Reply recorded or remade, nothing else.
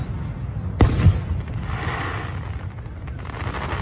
recorded